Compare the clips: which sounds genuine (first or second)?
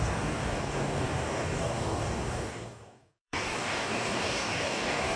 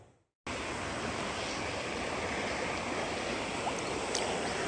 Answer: second